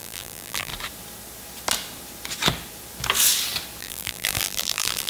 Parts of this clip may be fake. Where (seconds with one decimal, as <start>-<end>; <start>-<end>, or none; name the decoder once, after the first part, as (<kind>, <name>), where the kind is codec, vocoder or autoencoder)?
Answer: 0.0-0.7 (vocoder, BigVGAN v2); 3.8-5.1